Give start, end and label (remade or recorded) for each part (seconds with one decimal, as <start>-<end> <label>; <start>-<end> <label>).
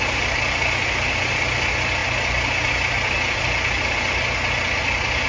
0.0-5.3 recorded